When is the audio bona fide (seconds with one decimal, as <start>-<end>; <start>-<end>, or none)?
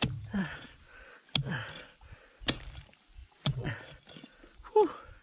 0.0-0.4; 1.0-3.2; 3.7-5.2